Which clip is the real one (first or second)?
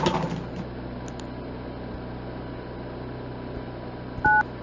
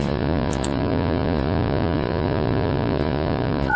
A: first